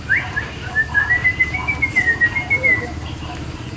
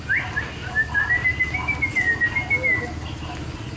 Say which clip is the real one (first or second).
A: second